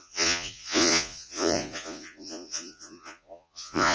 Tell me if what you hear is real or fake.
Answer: fake